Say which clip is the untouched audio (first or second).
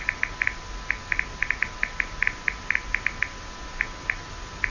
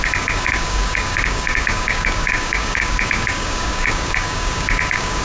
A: first